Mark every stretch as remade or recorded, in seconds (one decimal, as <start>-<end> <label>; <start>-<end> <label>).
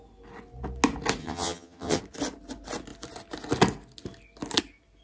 0.0-1.2 recorded; 1.2-2.0 remade; 2.0-5.0 recorded